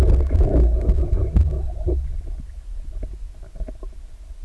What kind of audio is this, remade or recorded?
recorded